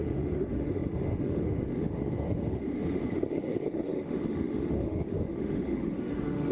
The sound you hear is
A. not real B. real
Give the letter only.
A